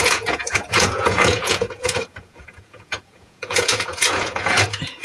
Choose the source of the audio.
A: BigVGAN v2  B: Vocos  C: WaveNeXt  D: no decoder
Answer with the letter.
B